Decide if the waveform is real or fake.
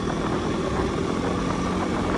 real